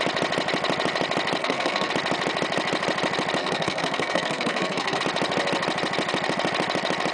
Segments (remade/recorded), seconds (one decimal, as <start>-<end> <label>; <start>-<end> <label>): 0.0-1.4 recorded; 1.4-1.9 remade; 1.9-3.4 recorded; 3.4-5.0 remade; 5.0-7.1 recorded